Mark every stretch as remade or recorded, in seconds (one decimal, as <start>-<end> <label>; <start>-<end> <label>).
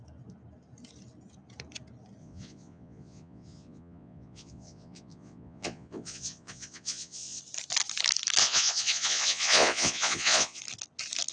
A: 0.0-2.2 recorded; 2.2-7.4 remade; 7.4-8.4 recorded; 8.4-10.6 remade; 10.6-11.3 recorded